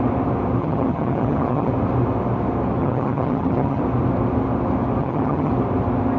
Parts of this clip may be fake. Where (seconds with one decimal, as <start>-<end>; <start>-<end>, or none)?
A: 0.6-1.7; 2.8-3.8; 5.0-5.5